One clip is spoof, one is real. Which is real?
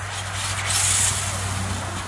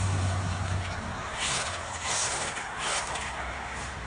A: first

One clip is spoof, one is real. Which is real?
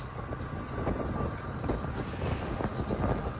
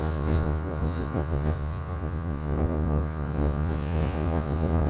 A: first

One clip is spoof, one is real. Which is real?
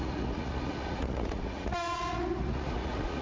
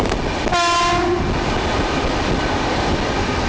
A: second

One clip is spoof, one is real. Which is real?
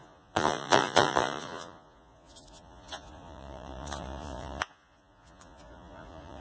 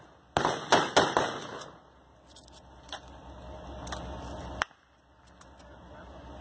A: second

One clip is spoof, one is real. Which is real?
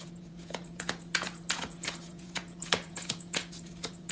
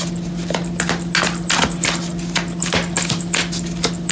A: second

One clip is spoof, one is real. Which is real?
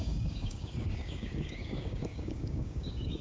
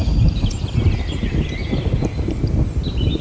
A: second